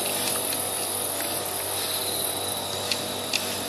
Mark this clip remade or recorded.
recorded